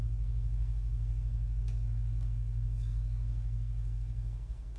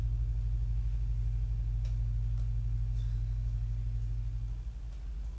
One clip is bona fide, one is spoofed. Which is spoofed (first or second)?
first